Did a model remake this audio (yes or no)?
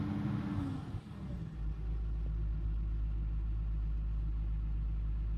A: no